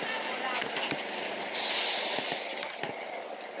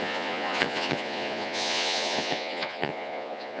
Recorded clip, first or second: first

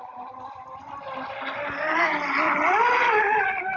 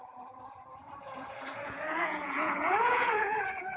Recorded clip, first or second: first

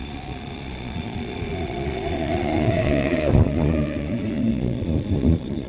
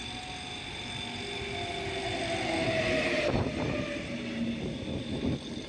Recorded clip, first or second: second